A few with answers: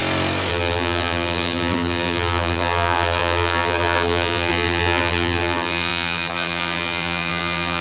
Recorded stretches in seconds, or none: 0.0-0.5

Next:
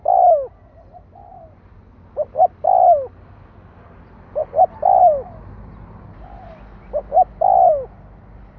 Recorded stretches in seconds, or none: 0.0-8.6

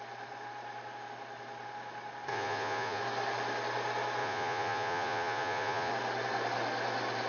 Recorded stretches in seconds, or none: 0.0-2.3; 3.0-4.2; 5.9-7.3

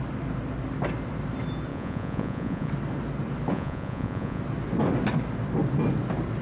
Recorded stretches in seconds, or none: 0.0-1.7; 2.7-3.5; 4.4-6.4

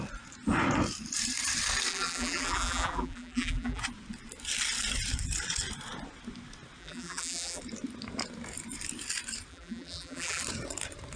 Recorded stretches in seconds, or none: 0.0-1.9; 3.8-6.8; 7.6-9.5; 10.4-11.2